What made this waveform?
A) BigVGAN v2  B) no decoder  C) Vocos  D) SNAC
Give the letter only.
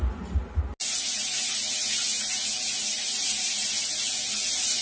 B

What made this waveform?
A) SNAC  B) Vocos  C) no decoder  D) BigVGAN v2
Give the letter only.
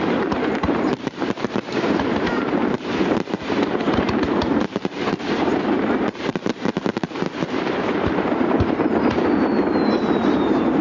D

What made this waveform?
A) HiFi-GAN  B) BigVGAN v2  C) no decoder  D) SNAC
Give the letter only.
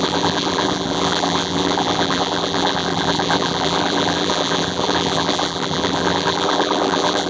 B